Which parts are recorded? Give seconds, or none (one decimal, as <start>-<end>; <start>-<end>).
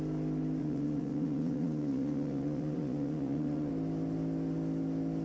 0.0-0.6; 3.7-5.2